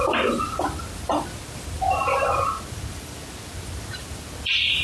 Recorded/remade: recorded